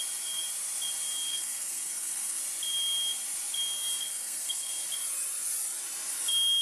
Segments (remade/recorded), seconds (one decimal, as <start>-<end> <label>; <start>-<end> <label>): 0.0-1.3 recorded; 1.3-2.4 remade; 2.4-4.1 recorded; 4.1-4.7 remade; 4.7-6.6 recorded